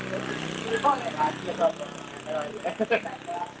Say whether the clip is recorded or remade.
recorded